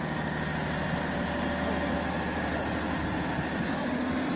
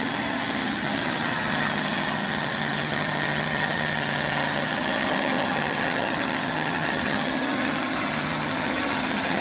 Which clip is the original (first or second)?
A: first